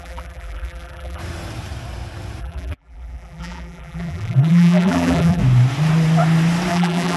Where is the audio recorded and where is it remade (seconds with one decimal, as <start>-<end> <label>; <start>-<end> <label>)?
0.0-1.2 remade; 1.2-2.4 recorded; 2.4-5.4 remade; 5.4-6.7 recorded; 6.7-7.2 remade